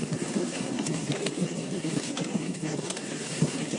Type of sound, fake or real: fake